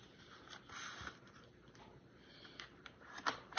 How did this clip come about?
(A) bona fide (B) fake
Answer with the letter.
B